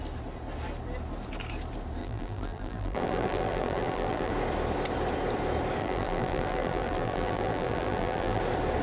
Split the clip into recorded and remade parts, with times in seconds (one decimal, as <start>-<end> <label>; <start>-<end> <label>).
0.0-2.0 recorded; 2.0-4.3 remade; 4.3-5.8 recorded; 5.8-8.4 remade; 8.4-8.8 recorded